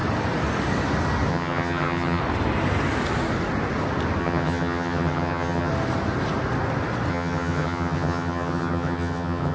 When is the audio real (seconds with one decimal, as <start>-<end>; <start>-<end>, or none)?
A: 0.0-1.3; 2.2-4.2; 5.7-7.1